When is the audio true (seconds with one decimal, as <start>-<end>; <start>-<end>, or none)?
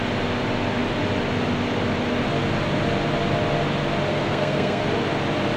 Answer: 0.0-4.1; 4.8-5.6